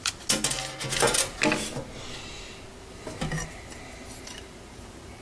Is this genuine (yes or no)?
yes